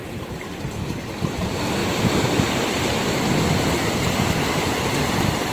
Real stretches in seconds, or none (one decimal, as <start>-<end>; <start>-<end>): 0.7-5.5